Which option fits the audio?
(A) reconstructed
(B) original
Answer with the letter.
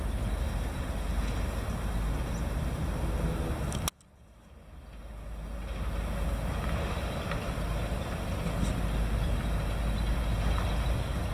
B